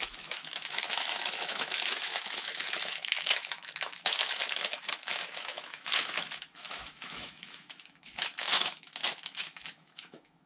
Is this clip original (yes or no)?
no